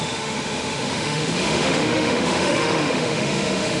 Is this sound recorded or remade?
remade